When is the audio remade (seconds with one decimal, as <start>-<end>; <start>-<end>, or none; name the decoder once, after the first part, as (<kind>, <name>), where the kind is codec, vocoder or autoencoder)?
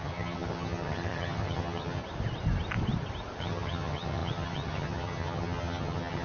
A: 0.0-2.0 (vocoder, HiFi-GAN); 3.4-6.2